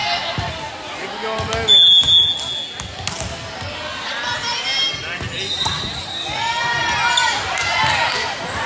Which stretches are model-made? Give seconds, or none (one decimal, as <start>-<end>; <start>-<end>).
none